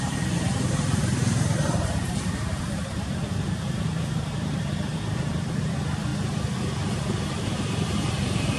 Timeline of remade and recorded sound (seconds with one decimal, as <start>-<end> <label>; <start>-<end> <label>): 0.0-6.1 remade; 6.1-6.9 recorded; 6.9-8.6 remade